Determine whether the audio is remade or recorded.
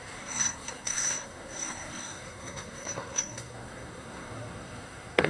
remade